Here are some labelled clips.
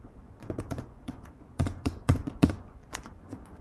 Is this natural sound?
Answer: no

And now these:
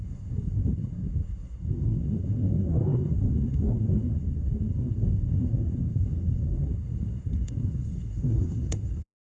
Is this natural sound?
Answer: no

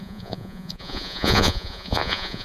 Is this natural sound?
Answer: no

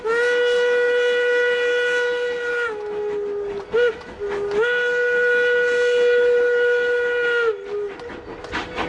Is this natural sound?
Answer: yes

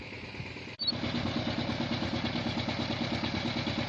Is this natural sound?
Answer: yes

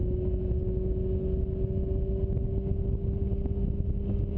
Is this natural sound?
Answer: yes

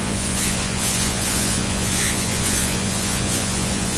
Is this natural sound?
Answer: no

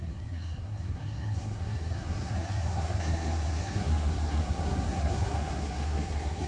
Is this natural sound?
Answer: no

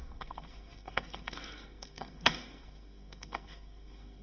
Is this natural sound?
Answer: no